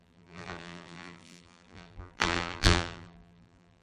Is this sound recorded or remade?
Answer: remade